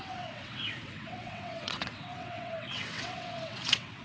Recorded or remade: remade